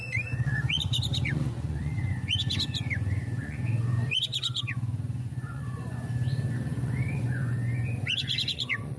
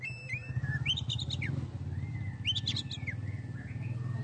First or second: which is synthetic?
first